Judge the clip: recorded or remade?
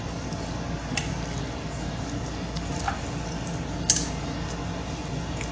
recorded